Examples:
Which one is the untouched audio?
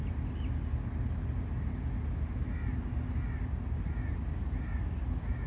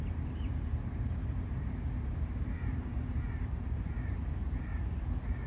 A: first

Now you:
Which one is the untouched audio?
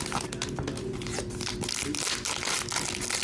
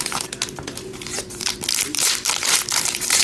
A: first